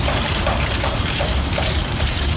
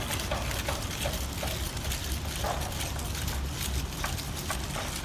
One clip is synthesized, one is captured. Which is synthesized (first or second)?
first